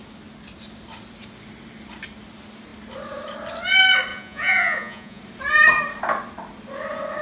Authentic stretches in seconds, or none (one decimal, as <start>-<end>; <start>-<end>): 0.0-4.1; 5.2-7.2

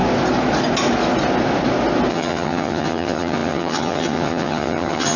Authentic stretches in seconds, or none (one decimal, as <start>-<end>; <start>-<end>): 0.0-2.1